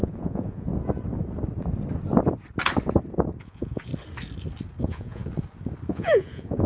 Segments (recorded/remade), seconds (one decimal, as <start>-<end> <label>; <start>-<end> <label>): 0.0-0.7 remade; 0.7-3.4 recorded; 3.4-3.9 remade; 3.9-4.8 recorded; 4.8-5.2 remade; 5.2-5.9 recorded; 5.9-6.7 remade